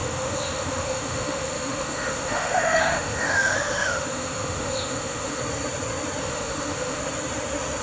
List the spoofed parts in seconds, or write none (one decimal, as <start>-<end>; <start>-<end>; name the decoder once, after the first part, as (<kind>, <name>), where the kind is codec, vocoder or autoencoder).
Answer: 0.0-5.4 (autoencoder, DAC-VAE); 6.2-7.0